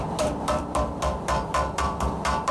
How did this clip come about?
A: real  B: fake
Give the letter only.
B